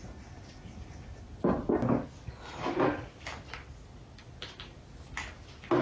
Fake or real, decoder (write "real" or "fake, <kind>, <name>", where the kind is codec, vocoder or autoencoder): real